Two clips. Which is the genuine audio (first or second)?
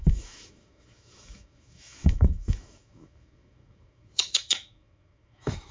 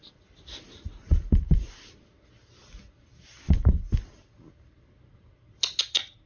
second